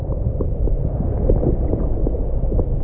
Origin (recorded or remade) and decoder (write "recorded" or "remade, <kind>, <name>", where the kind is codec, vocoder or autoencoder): recorded